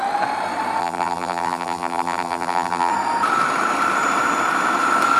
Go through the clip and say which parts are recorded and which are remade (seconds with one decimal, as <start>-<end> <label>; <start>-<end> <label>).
0.0-0.8 recorded; 0.8-2.9 remade; 2.9-5.2 recorded